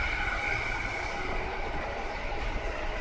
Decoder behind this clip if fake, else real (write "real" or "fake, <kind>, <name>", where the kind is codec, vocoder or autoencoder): real